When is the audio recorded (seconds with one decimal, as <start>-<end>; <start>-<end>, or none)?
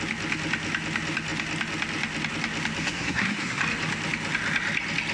0.0-2.8; 3.6-5.1